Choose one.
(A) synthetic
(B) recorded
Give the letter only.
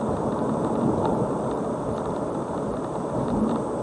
A